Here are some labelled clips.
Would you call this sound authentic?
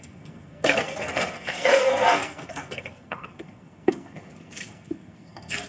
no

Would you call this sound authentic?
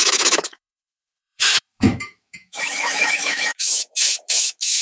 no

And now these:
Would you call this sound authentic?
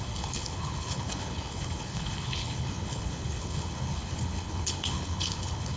no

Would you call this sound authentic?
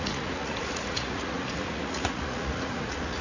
no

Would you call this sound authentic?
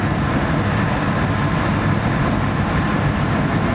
yes